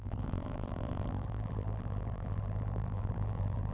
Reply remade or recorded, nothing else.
remade